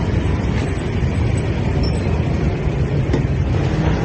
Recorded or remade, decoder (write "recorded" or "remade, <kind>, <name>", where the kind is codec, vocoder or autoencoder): recorded